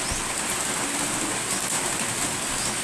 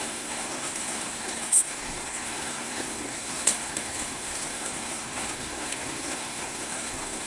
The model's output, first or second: second